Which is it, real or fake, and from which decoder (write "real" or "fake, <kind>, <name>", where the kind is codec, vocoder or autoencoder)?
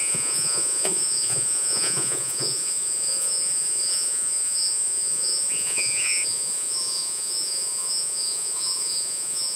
fake, vocoder, Vocos